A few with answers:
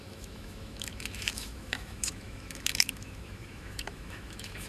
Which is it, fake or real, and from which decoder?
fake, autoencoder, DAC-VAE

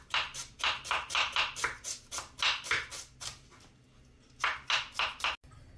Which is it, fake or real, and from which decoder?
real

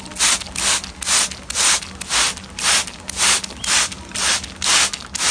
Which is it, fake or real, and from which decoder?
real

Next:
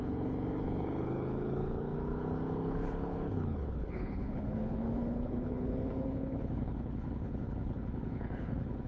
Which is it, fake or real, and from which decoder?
fake, codec, HILCodec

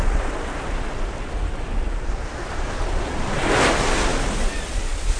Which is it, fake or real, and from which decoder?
real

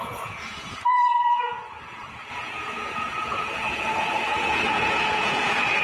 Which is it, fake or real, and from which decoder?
fake, vocoder, Vocos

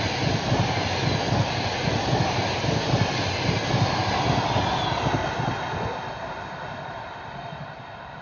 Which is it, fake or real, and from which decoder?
real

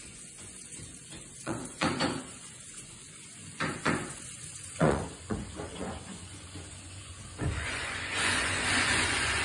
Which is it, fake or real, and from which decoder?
fake, vocoder, Vocos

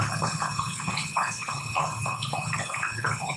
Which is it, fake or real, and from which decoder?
fake, codec, HILCodec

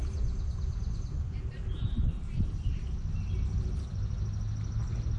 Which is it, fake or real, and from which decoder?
real